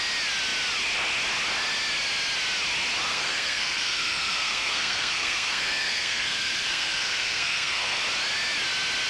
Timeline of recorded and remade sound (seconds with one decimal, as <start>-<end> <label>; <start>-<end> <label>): 0.0-3.1 recorded; 3.1-8.0 remade; 8.0-9.1 recorded